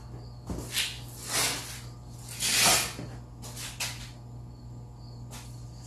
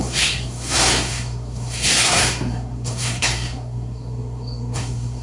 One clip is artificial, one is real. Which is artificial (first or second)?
second